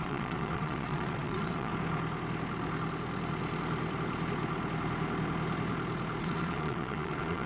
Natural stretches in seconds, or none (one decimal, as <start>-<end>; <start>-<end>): 1.7-6.2